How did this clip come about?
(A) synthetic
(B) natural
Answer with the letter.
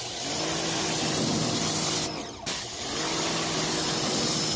B